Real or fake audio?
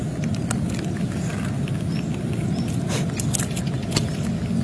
real